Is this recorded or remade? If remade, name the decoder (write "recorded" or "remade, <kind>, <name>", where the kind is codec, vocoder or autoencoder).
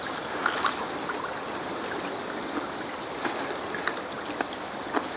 recorded